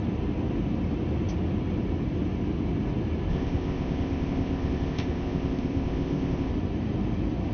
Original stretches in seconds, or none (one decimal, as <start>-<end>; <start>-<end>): 0.0-3.3; 6.5-7.5